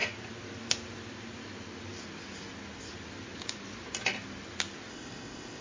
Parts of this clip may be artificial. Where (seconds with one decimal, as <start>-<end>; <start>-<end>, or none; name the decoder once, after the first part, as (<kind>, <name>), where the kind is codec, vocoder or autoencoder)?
4.9-5.6 (codec, ZipCodec)